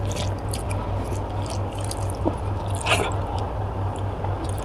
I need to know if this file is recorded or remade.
recorded